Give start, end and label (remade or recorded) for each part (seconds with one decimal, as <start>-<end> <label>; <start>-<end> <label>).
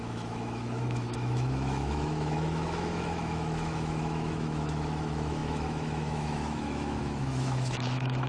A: 0.0-8.3 remade